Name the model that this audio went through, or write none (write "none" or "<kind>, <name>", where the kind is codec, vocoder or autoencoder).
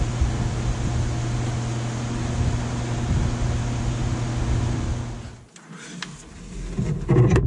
none